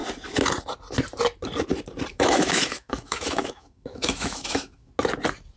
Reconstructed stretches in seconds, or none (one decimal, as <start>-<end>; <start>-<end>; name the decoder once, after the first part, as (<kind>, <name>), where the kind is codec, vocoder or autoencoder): 2.1-4.9 (autoencoder, DAC-VAE)